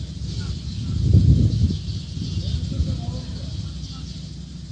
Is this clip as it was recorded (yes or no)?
yes